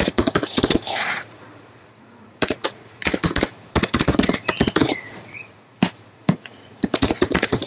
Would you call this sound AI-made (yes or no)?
yes